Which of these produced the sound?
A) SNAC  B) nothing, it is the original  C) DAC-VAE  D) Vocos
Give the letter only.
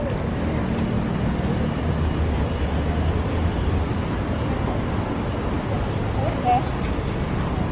B